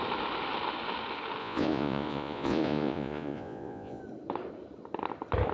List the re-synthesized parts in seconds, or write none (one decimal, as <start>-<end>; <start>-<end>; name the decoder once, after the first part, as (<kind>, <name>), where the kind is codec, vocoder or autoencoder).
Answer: 1.4-4.0 (vocoder, Vocos)